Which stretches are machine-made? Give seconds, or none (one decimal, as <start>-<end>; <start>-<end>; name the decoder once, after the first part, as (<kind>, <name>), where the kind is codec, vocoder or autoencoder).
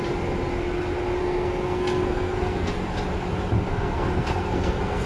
1.2-2.7 (codec, SNAC); 3.7-5.1